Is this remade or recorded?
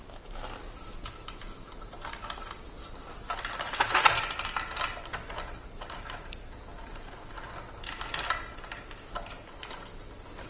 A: recorded